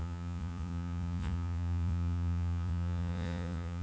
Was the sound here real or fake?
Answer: fake